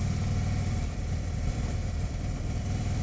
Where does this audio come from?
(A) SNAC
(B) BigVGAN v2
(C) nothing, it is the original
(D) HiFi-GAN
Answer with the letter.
B